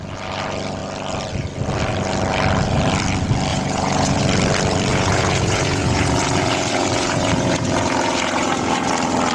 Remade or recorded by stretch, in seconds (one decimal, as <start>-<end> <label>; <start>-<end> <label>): 0.0-3.5 recorded; 3.5-4.2 remade; 4.2-4.9 recorded; 4.9-8.9 remade; 8.9-9.3 recorded